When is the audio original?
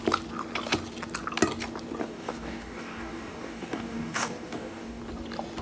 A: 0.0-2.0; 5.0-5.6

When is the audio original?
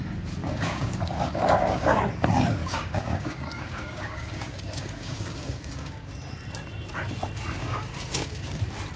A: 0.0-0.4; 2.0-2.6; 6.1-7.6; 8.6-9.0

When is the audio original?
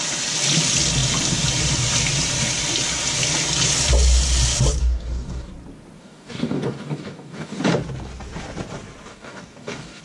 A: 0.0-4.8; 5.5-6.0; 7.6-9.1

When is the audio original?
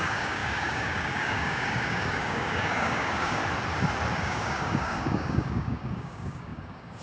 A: 3.4-4.2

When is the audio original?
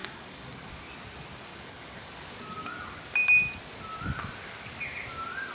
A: 0.7-1.5; 2.3-5.5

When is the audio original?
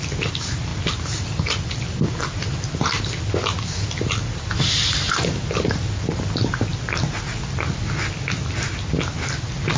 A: 0.0-9.8